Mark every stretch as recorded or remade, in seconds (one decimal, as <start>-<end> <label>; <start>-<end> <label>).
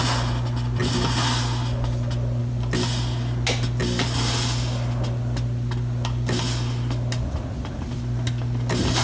0.0-9.0 recorded